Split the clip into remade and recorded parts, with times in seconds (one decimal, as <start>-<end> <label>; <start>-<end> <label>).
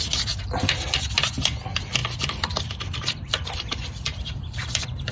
0.0-2.0 recorded; 2.0-5.1 remade